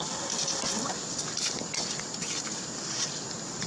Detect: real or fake real